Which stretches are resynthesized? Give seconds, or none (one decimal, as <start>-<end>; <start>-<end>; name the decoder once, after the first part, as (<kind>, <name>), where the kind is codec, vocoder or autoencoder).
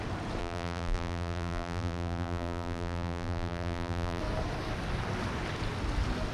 0.4-4.2 (vocoder, BigVGAN v2)